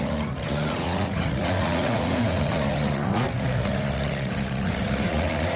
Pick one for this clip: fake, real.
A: fake